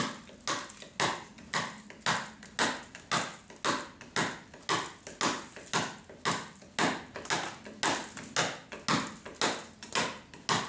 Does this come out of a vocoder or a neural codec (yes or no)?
no